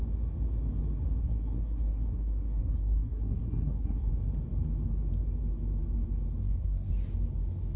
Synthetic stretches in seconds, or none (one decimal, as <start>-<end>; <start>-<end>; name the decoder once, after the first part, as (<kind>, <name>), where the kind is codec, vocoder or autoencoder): 1.2-4.1 (codec, SNAC); 6.4-6.9